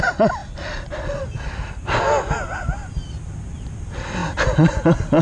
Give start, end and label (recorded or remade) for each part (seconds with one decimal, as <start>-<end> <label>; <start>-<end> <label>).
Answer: 0.0-5.2 recorded